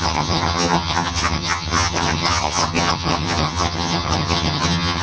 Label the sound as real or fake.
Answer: fake